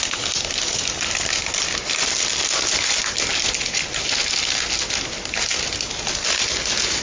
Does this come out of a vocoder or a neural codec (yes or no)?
no